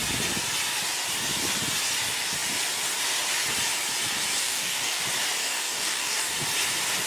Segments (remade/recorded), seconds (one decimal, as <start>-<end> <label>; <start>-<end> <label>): 0.0-4.4 recorded; 4.4-5.0 remade; 5.0-5.4 recorded; 5.4-6.3 remade; 6.3-7.1 recorded